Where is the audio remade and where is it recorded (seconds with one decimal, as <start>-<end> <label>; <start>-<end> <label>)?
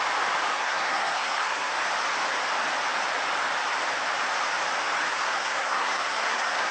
0.0-0.5 recorded; 0.5-1.7 remade; 1.7-5.1 recorded; 5.1-6.7 remade